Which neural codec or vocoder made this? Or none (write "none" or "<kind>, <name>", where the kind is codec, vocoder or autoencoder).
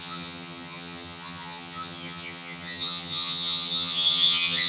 vocoder, HiFi-GAN